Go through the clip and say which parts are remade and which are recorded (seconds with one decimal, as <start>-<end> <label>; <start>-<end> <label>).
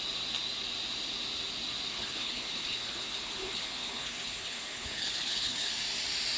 0.0-1.9 recorded; 1.9-5.7 remade; 5.7-6.4 recorded